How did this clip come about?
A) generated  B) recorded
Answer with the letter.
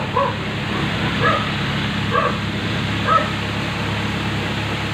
B